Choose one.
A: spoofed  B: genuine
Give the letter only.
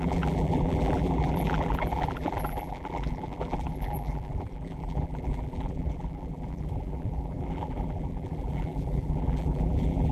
A